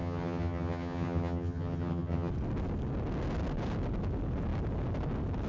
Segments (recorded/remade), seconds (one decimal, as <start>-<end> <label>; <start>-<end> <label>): 0.0-2.3 remade; 2.3-5.5 recorded